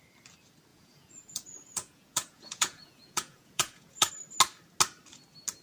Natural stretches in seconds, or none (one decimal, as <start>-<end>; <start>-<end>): 0.0-0.7; 4.1-5.6